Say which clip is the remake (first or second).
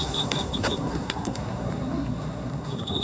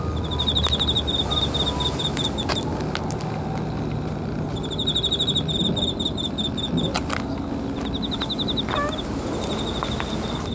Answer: first